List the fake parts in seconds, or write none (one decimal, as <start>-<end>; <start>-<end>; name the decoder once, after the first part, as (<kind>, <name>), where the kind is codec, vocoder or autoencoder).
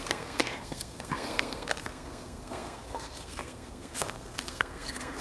0.0-5.2 (codec, SNAC)